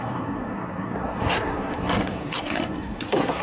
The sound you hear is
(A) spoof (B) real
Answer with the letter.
A